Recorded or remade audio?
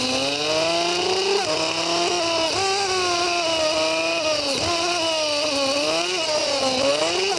recorded